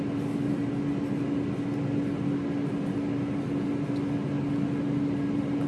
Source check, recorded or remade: recorded